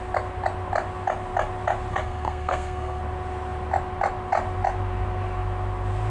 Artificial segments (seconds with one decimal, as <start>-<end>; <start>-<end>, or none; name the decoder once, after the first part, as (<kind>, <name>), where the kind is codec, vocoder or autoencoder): 1.9-3.0 (codec, SNAC)